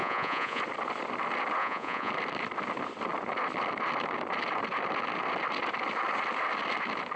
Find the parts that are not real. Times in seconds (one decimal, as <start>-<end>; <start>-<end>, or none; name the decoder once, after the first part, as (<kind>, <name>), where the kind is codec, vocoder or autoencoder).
0.0-0.6 (vocoder, Vocos); 1.6-2.1